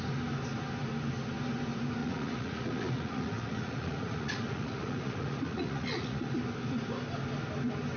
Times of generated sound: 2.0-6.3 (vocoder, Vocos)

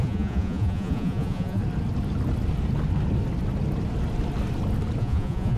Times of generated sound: 0.0-1.6 (vocoder, Vocos); 5.0-5.6

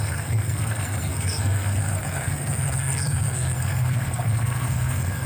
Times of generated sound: 0.0-5.3 (codec, SNAC)

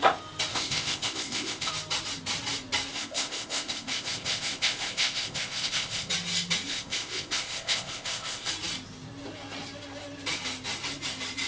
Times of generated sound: 0.5-1.7 (codec, ZipCodec); 2.9-6.1; 6.7-8.5

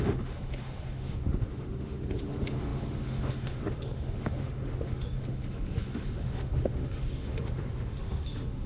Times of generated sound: 0.0-8.7 (autoencoder, DAC-VAE)

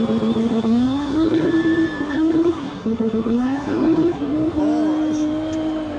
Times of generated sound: 0.4-1.5 (codec, SNAC); 2.1-4.6